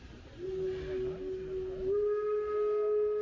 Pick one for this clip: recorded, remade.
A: recorded